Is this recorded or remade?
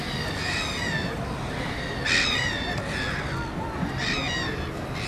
recorded